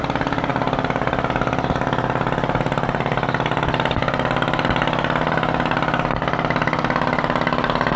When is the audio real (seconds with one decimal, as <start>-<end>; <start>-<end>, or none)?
0.0-8.0